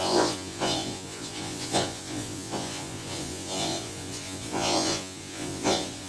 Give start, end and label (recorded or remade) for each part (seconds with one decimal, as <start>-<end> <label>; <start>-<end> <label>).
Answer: 0.0-6.1 remade